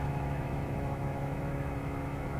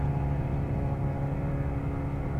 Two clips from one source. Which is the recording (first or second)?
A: second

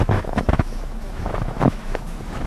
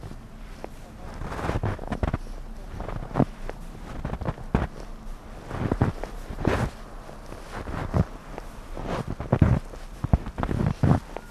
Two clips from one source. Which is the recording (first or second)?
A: second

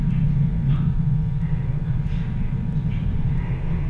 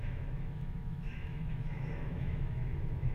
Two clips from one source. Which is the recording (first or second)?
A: first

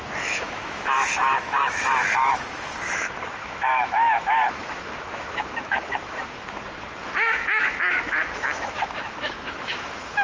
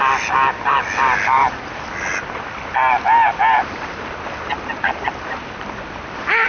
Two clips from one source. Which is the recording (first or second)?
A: second